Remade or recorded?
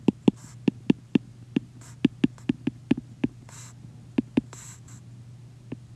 recorded